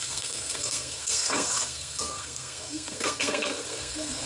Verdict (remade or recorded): remade